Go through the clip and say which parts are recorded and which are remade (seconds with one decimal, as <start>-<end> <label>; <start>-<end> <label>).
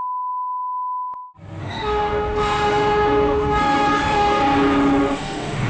0.0-1.6 recorded; 1.6-4.4 remade; 4.4-5.0 recorded; 5.0-5.7 remade